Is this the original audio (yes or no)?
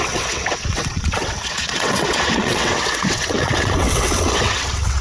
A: no